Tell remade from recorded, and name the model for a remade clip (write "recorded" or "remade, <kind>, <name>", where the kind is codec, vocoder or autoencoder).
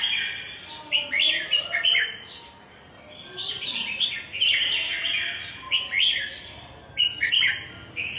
recorded